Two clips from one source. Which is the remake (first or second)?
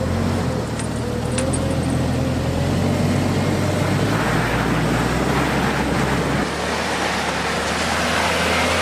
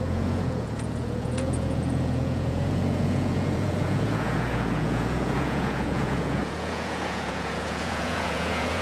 second